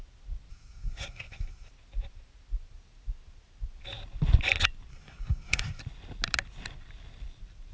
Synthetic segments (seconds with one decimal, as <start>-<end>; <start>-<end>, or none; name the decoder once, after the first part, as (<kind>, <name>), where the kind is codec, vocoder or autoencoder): 0.5-1.7 (codec, SNAC); 4.9-5.8

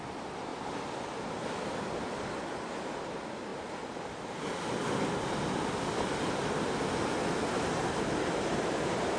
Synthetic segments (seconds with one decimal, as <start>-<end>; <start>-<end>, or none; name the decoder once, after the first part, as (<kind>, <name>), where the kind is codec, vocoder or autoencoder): none

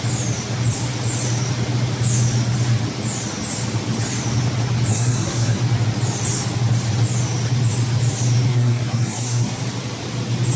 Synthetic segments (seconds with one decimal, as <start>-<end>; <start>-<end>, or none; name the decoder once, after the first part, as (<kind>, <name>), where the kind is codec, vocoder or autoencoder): 4.9-5.6 (codec, SNAC); 8.5-9.6

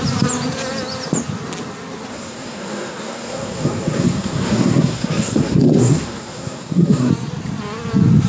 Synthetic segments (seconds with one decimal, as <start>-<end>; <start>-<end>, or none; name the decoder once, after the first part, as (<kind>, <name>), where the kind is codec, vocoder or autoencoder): 2.1-7.1 (codec, SNAC)

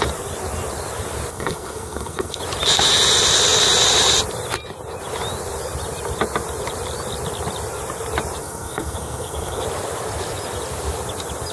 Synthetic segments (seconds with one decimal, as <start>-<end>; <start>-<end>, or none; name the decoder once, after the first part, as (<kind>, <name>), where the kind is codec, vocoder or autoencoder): 1.3-2.4 (codec, SNAC); 8.4-9.6

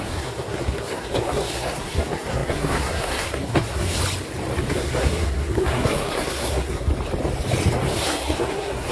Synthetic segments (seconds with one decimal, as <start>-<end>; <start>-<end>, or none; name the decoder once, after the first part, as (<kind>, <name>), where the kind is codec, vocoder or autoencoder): 0.0-4.0 (codec, SNAC); 4.7-6.9; 7.9-8.9

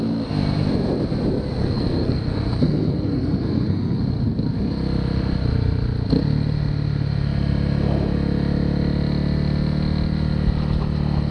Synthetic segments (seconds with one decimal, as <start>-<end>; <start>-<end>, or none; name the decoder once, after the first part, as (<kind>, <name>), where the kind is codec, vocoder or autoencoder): 1.6-4.0 (codec, SNAC)

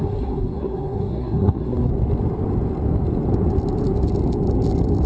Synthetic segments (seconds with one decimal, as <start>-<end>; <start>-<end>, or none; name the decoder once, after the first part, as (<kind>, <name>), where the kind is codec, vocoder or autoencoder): 0.0-1.9 (codec, SNAC)